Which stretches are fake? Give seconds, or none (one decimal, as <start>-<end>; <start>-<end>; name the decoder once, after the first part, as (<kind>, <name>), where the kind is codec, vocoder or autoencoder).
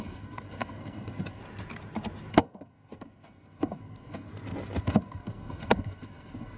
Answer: 0.0-1.4 (codec, SNAC); 2.3-4.3; 4.8-6.6